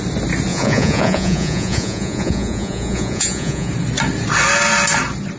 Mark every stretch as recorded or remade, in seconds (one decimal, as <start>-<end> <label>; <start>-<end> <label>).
0.0-0.5 recorded; 0.5-3.7 remade; 3.7-5.4 recorded

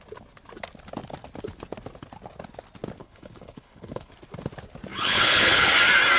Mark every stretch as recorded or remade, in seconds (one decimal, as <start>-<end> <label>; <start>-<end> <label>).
0.0-3.0 recorded; 3.0-4.1 remade; 4.1-4.9 recorded; 4.9-5.7 remade; 5.7-6.2 recorded

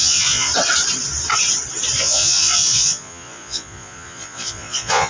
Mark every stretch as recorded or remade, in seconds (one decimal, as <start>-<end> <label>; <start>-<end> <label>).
0.0-0.5 remade; 0.5-2.0 recorded; 2.0-5.1 remade

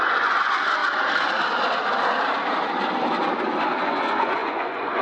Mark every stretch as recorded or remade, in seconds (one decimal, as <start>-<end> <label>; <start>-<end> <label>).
0.0-0.8 remade; 0.8-3.8 recorded; 3.8-5.0 remade

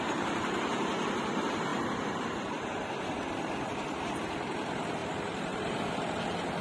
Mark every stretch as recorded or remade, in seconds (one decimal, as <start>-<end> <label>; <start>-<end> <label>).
0.0-5.0 recorded; 5.0-5.9 remade; 5.9-6.6 recorded

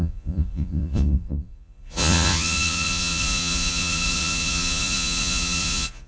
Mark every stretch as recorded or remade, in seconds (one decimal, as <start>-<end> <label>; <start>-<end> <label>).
0.0-6.1 remade

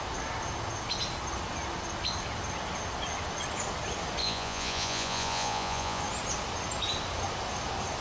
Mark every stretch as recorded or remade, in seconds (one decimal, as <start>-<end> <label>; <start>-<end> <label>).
0.0-4.2 recorded; 4.2-6.0 remade; 6.0-8.0 recorded

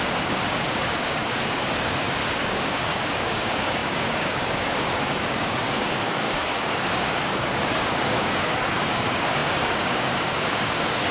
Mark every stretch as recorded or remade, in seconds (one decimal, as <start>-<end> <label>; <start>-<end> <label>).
0.0-11.1 remade